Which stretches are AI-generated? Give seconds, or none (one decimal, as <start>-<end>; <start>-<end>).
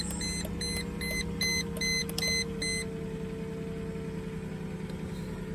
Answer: none